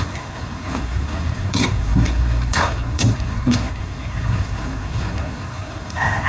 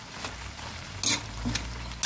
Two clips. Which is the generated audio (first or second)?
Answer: first